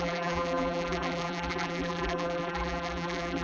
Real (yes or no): no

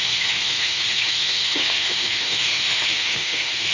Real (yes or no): no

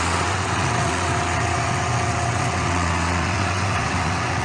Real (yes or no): no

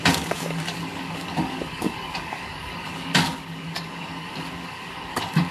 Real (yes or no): no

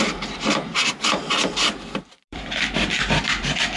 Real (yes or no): no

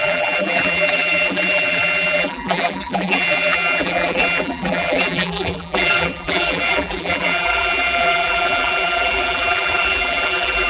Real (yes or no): no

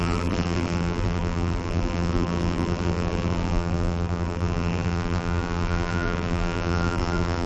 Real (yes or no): no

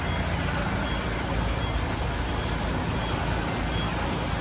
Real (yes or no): yes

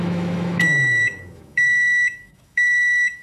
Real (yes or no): no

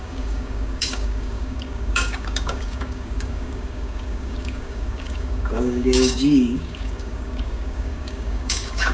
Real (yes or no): no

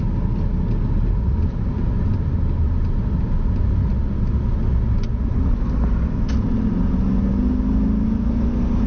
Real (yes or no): yes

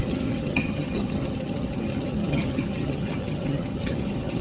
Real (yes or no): no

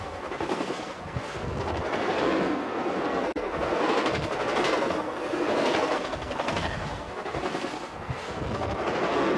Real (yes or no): no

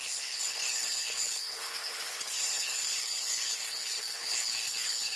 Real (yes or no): no